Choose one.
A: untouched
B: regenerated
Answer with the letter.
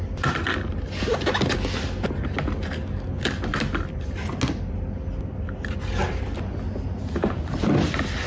A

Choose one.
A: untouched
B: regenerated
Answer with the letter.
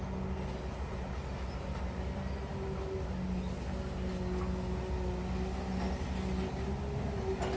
A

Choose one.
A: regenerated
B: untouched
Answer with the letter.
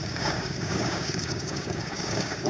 A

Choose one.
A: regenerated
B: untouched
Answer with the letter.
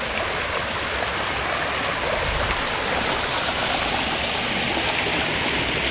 B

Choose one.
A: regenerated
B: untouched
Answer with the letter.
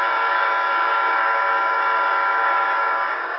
A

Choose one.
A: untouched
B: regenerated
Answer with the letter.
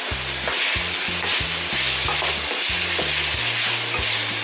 A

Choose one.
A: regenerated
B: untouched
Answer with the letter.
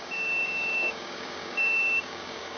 A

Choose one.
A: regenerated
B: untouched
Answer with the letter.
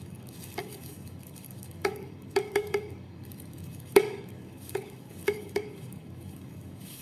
A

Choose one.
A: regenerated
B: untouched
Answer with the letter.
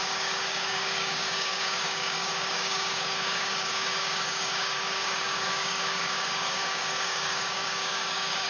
A